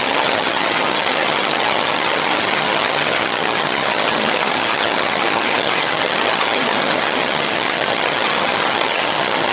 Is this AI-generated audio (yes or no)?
yes